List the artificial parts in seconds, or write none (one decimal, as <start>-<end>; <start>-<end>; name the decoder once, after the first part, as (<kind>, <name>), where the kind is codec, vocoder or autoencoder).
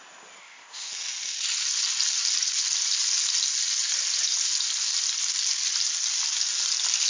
0.4-0.9 (codec, ZipCodec)